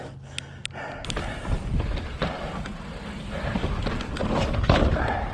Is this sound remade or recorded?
recorded